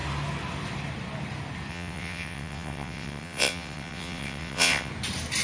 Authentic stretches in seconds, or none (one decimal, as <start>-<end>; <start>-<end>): 0.0-1.7; 4.9-5.4